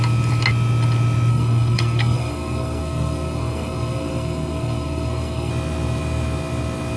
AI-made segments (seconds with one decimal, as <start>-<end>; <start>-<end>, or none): 1.3-5.5

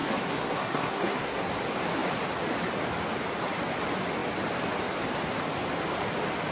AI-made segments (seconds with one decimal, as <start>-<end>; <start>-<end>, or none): 0.0-1.5

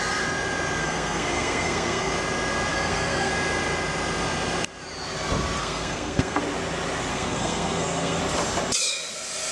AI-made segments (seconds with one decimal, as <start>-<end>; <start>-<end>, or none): 0.8-2.1; 2.7-3.3; 5.6-6.4; 7.1-8.2

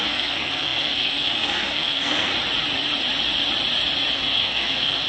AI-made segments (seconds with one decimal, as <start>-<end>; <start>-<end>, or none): 0.0-2.3; 4.1-5.1

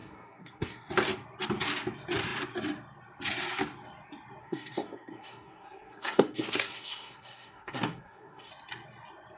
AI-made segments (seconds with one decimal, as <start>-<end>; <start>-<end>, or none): 0.0-0.9; 4.4-8.5